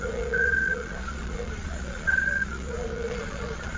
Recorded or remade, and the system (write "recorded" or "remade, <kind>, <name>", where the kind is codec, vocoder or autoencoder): remade, vocoder, Vocos